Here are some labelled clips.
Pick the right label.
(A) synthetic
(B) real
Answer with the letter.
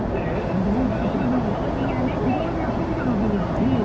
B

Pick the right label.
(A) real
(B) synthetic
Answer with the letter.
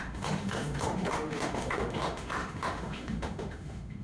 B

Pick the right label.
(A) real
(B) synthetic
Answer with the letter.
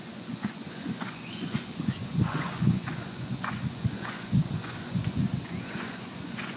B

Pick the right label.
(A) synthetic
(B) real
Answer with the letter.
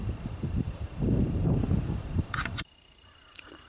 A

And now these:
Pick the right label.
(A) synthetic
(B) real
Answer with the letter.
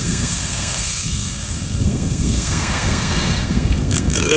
A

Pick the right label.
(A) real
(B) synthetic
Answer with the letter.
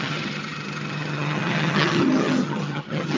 B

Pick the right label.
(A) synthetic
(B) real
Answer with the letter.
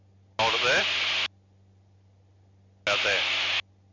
B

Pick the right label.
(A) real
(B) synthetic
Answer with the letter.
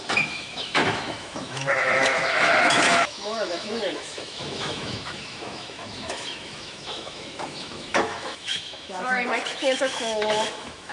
B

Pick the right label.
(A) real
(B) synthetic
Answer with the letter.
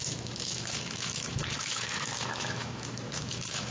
B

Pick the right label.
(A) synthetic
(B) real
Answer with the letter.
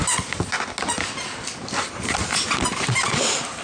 B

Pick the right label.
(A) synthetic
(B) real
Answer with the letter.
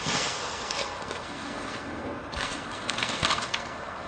A